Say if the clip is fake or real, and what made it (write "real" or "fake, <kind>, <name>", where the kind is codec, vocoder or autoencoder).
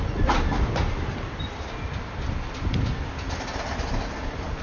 real